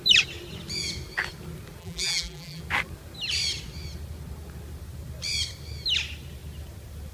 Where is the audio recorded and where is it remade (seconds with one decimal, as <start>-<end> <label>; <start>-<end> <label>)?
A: 0.0-1.8 recorded; 1.8-2.6 remade; 2.6-7.1 recorded